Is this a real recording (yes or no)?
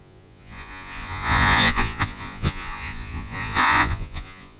no